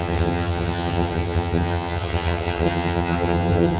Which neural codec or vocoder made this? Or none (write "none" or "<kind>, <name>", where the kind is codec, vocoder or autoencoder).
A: vocoder, HiFi-GAN